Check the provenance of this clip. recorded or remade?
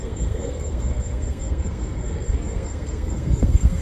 remade